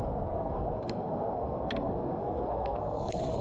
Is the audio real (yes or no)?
no